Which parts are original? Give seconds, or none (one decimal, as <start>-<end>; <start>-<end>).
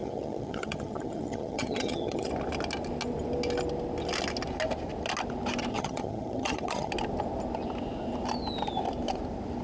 2.3-5.7; 6.9-9.6